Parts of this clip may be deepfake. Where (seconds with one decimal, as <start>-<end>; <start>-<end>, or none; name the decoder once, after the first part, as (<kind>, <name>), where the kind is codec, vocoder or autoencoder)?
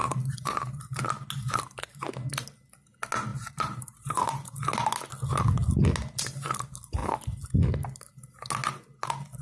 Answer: 0.0-1.0 (vocoder, BigVGAN v2); 3.3-4.6